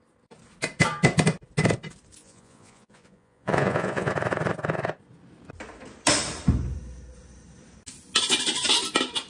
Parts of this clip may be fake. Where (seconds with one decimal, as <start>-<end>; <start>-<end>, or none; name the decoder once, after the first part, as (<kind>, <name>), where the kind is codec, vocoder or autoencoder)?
2.2-4.1 (vocoder, Vocos)